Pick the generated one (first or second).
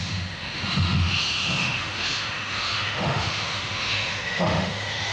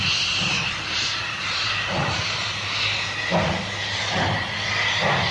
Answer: first